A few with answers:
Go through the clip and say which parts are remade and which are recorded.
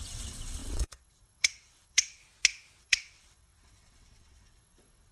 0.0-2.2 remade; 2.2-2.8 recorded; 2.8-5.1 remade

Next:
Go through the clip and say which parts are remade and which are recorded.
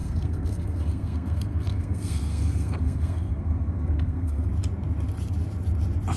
0.0-4.5 remade; 4.5-6.2 recorded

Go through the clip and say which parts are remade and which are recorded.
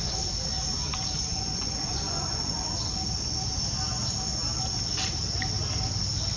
0.0-1.3 recorded; 1.3-2.6 remade; 2.6-6.4 recorded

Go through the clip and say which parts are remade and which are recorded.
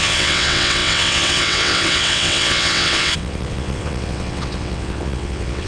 0.0-5.7 remade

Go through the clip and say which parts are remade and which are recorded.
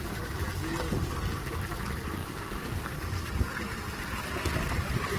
0.0-2.2 recorded; 2.2-3.5 remade; 3.5-5.2 recorded